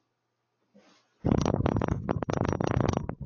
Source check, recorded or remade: recorded